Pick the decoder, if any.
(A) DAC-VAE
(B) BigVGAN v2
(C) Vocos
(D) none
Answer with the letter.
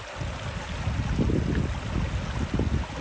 D